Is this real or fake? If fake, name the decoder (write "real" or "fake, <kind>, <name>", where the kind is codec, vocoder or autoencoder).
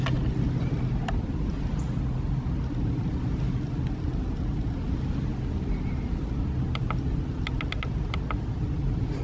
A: real